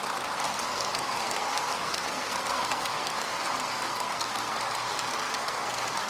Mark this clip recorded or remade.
remade